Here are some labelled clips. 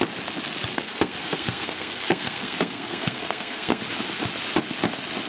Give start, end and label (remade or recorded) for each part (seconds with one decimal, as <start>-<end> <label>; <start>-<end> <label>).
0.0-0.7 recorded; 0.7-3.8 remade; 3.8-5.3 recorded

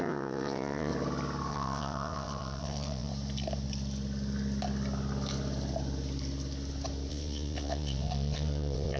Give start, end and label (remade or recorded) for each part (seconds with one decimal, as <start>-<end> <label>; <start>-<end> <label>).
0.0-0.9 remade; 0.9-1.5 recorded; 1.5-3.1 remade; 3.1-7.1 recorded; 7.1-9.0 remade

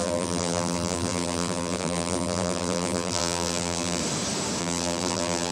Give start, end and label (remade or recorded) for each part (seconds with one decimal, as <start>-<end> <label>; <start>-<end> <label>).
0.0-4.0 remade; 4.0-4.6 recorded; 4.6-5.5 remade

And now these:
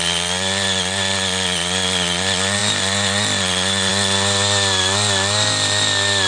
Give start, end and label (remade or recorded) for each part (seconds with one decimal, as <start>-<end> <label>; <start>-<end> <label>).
0.0-6.3 recorded

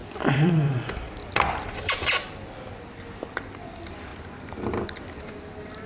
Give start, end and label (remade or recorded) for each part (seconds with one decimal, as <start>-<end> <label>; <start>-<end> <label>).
0.0-0.8 remade; 0.8-5.9 recorded